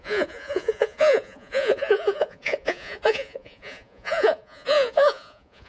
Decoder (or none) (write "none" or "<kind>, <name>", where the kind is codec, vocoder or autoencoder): vocoder, Vocos